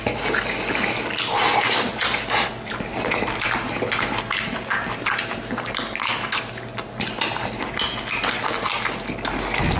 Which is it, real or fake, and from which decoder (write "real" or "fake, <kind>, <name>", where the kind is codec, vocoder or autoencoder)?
real